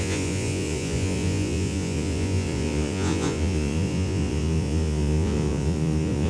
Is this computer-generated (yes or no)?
yes